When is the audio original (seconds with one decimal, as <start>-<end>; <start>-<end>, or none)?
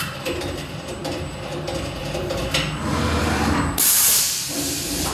1.0-2.0; 2.4-3.2